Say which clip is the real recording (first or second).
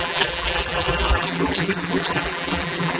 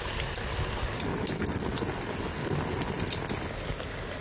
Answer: second